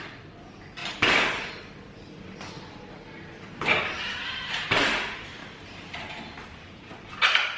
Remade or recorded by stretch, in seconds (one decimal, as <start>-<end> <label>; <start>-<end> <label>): 0.0-5.4 recorded; 5.4-6.1 remade; 6.1-6.5 recorded; 6.5-7.1 remade; 7.1-7.6 recorded